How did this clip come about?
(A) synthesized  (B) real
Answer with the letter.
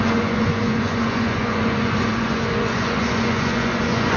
A